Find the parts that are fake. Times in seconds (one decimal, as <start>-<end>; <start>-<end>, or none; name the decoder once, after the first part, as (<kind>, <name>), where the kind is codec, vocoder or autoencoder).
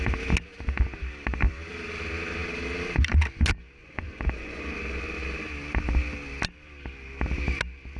3.8-4.6 (vocoder, Vocos)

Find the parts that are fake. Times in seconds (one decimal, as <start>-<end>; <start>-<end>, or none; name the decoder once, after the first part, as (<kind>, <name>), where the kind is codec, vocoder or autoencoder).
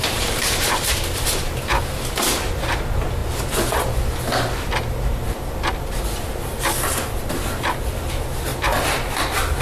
0.0-3.2 (vocoder, BigVGAN v2); 8.1-8.5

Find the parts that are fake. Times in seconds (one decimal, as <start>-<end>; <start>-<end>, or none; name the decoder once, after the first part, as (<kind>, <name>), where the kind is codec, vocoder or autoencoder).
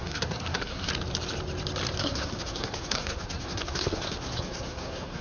0.0-0.9 (codec, SNAC); 2.0-5.2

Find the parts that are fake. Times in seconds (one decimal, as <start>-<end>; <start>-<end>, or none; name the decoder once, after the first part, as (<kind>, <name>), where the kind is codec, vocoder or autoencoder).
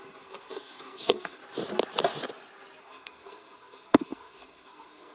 0.0-1.4 (codec, SNAC); 2.8-5.1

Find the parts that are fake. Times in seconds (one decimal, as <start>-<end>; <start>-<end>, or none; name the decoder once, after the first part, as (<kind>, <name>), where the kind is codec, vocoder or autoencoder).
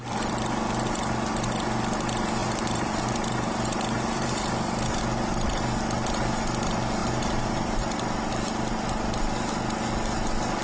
2.4-5.0 (vocoder, BigVGAN v2); 7.0-7.8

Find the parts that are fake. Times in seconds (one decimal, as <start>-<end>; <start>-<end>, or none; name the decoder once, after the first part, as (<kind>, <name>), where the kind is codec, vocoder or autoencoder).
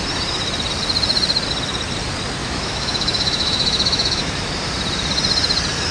2.4-4.5 (autoencoder, DAC-VAE)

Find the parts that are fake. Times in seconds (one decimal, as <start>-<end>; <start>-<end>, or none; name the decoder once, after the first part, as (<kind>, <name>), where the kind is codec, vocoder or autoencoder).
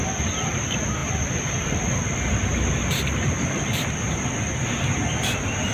none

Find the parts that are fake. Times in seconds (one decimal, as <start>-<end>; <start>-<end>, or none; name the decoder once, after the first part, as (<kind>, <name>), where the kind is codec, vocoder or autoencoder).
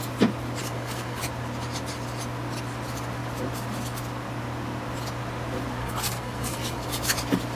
0.6-1.2 (codec, SNAC); 5.8-6.9